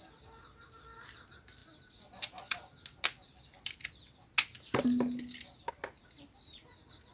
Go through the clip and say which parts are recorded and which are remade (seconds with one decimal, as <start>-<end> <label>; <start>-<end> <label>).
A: 0.0-7.1 recorded